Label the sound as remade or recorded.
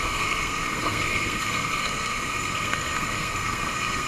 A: remade